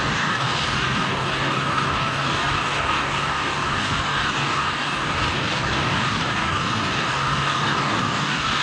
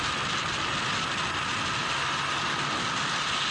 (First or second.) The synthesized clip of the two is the first